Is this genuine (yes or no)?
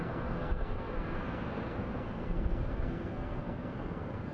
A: no